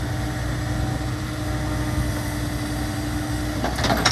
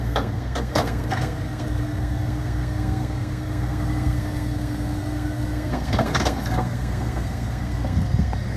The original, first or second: first